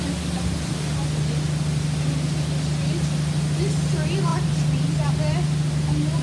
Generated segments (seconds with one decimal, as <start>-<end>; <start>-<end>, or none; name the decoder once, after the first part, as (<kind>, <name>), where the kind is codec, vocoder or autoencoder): 4.3-5.1 (vocoder, BigVGAN v2)